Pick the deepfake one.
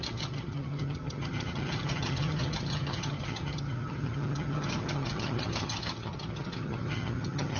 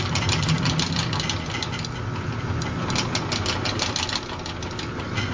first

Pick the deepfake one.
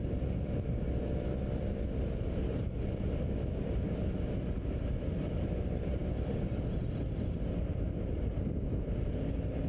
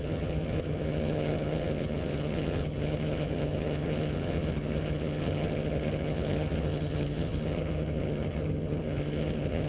second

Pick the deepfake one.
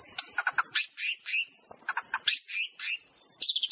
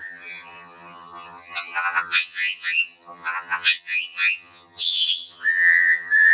second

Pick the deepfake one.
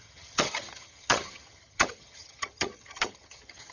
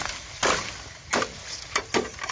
first